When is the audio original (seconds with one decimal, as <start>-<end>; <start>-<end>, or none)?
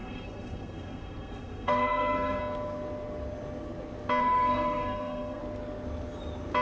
2.4-4.2; 5.4-6.6